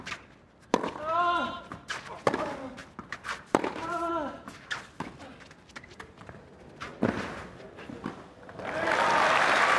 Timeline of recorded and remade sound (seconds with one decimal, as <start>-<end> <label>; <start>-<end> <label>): 0.0-2.8 recorded; 2.8-4.1 remade; 4.1-9.8 recorded